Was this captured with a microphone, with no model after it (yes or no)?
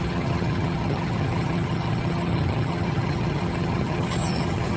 no